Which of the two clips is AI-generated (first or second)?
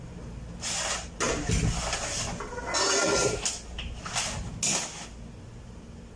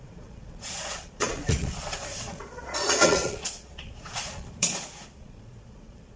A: second